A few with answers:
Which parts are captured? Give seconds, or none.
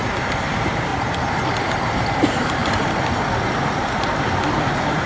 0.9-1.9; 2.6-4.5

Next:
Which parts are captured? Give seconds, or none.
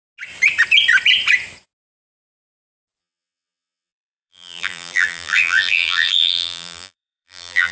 0.0-3.0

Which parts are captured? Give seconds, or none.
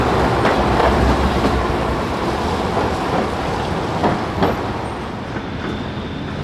0.0-0.8; 2.4-6.4